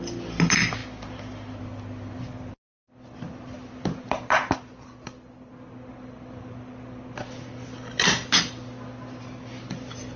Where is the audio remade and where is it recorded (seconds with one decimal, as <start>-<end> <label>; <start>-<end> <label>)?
0.0-0.8 remade; 0.8-1.6 recorded; 1.6-10.2 remade